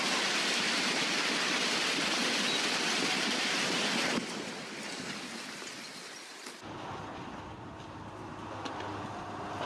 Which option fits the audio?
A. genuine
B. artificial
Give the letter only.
A